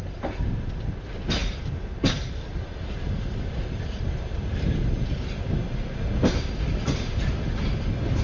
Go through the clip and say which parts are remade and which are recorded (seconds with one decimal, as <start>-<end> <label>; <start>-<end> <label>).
0.0-8.2 recorded